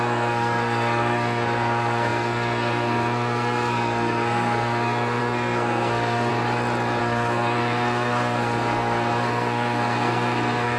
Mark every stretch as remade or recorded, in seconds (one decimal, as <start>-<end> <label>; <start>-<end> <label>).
0.0-6.3 remade; 6.3-7.0 recorded; 7.0-10.8 remade